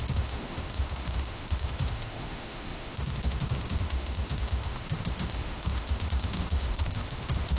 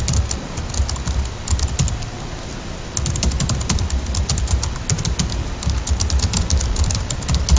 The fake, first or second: first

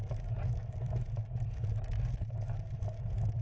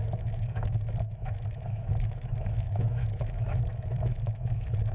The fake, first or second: second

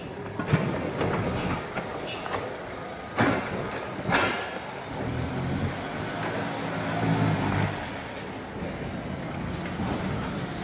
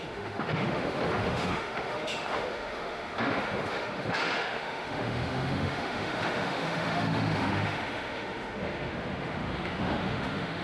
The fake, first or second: second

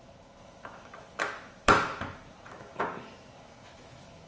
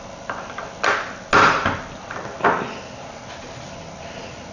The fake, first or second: first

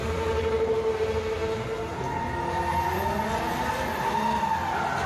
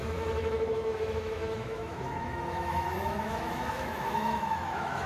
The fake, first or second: second